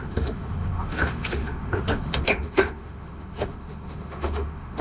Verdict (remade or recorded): remade